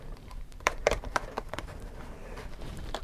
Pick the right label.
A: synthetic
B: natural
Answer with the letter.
A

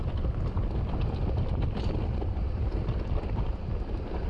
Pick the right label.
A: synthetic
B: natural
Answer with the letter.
B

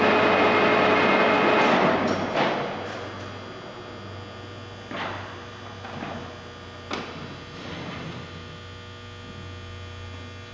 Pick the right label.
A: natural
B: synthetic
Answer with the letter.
A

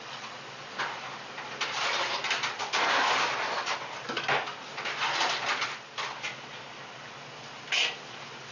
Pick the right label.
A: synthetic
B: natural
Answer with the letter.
B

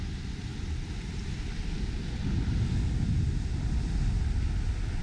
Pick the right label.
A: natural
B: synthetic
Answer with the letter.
A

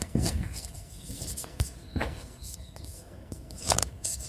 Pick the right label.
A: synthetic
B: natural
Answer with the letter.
A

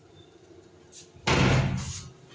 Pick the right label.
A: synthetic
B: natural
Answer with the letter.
B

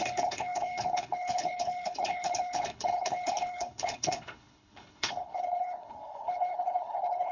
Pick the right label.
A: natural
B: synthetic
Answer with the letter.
B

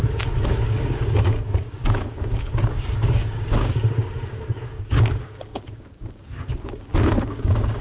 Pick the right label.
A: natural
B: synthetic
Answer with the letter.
B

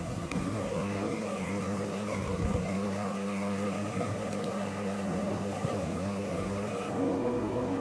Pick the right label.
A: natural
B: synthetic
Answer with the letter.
B